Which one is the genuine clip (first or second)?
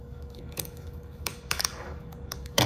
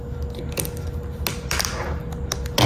second